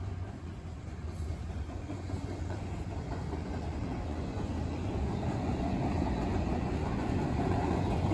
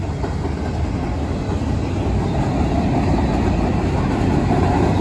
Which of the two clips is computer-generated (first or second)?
first